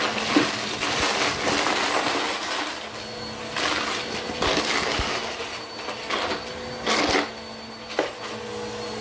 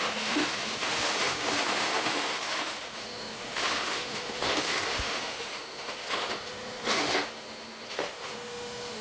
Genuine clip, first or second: first